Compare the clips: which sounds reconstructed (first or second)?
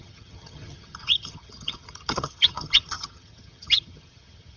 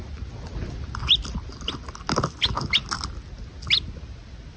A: first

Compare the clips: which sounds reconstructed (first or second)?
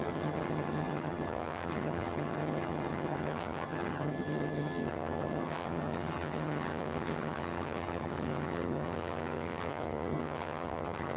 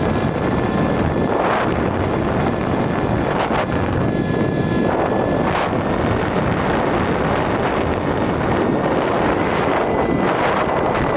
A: first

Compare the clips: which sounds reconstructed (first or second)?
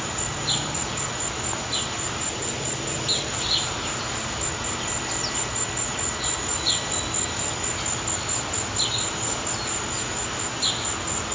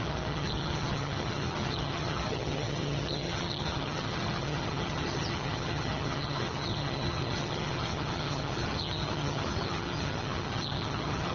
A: second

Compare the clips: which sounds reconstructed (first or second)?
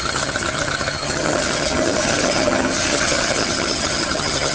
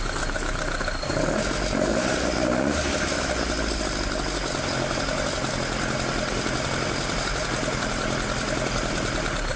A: first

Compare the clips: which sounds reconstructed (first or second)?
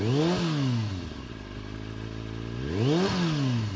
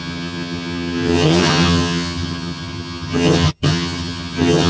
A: second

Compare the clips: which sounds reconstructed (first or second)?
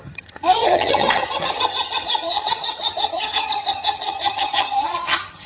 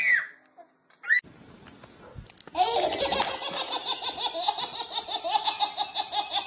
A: first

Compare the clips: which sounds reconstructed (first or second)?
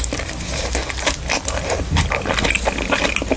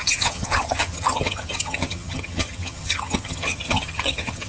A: second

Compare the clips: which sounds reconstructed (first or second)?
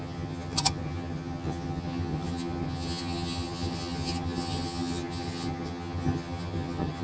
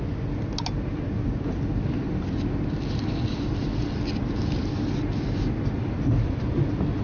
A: first